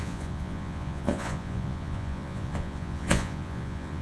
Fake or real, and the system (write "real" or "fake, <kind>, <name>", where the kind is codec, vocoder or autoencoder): fake, vocoder, Vocos